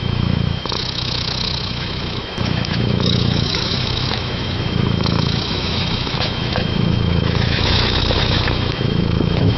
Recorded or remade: remade